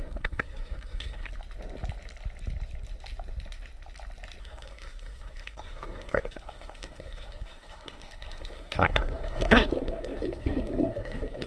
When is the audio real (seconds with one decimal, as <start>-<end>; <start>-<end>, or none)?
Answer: 1.3-4.4